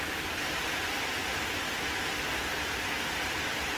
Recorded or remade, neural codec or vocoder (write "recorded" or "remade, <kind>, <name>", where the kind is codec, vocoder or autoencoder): recorded